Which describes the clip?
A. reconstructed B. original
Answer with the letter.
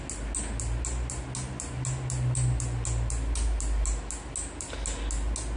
B